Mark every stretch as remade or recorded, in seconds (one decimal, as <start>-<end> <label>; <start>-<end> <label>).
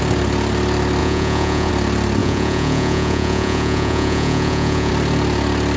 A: 0.0-1.0 recorded; 1.0-1.7 remade; 1.7-2.2 recorded; 2.2-4.9 remade; 4.9-5.8 recorded